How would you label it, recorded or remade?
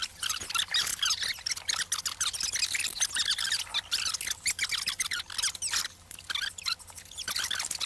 recorded